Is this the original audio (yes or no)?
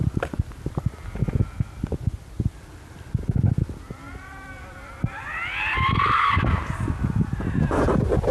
yes